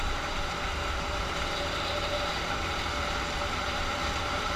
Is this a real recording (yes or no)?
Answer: no